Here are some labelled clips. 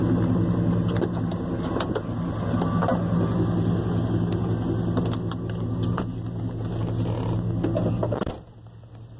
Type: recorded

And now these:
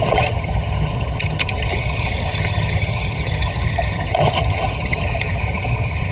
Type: remade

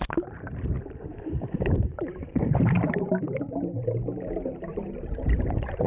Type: remade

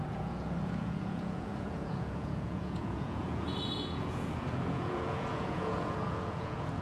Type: remade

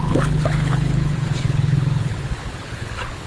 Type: remade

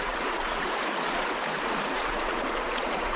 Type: remade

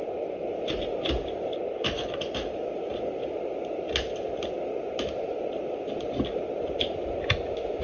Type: recorded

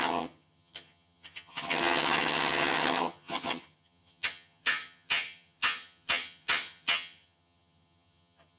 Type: remade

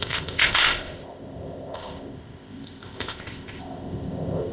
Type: remade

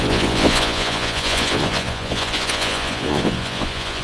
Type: remade